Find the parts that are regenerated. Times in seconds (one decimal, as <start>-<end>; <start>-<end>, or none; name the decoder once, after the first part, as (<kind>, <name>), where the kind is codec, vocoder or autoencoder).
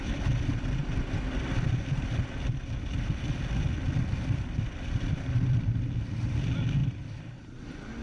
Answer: 6.8-7.6 (vocoder, BigVGAN v2)